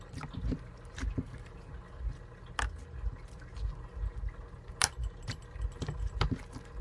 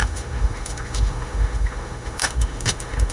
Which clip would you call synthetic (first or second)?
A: second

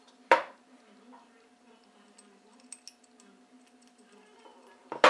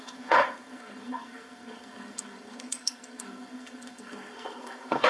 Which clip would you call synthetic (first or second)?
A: second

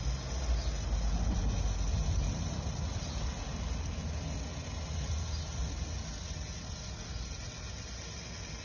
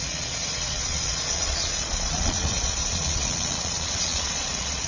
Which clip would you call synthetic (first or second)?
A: second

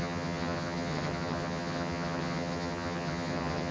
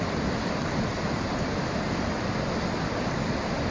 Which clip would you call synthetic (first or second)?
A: first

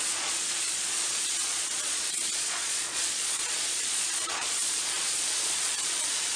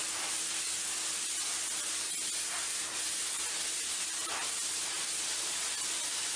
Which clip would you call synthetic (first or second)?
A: first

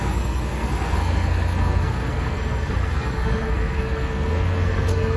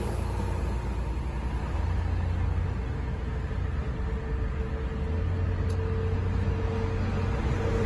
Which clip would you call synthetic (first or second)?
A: first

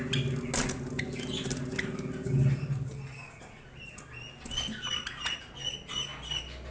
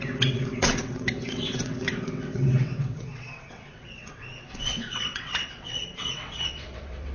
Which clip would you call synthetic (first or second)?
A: second